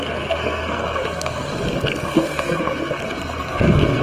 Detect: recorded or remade remade